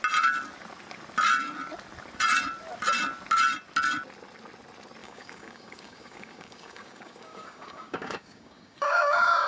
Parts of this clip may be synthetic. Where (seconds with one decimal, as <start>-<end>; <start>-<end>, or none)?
5.0-9.5